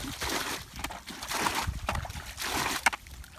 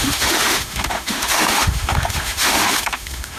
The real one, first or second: first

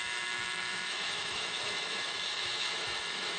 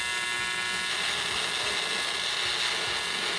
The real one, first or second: second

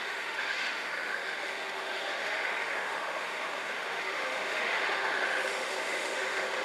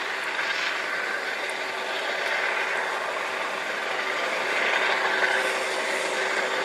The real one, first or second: second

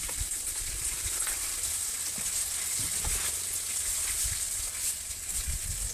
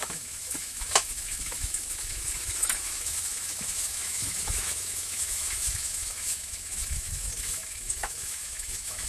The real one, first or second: first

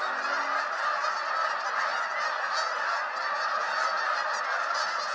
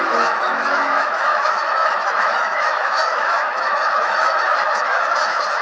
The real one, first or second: first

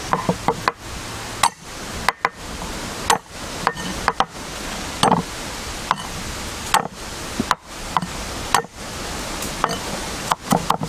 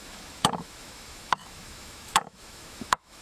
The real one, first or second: first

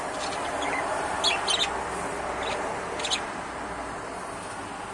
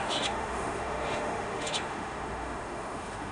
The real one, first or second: first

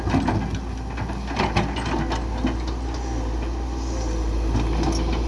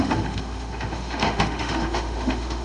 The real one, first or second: first